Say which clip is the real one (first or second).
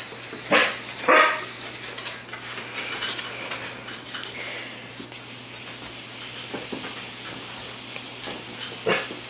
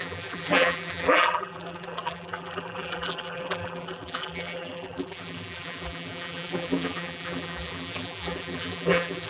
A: first